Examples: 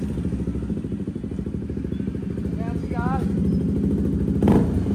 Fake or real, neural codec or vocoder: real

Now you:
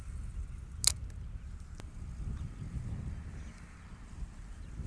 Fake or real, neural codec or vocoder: real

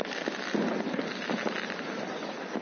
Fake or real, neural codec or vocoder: real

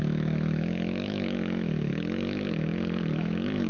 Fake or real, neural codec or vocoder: fake, autoencoder, DAC-VAE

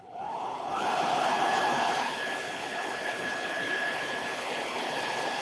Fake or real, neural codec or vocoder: fake, codec, HILCodec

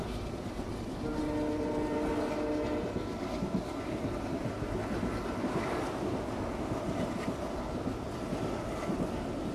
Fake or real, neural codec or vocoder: real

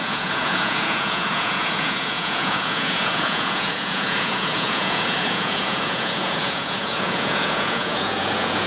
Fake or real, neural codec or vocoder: fake, vocoder, Vocos